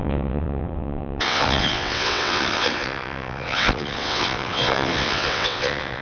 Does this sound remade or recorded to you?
remade